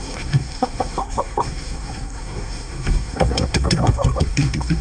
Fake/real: fake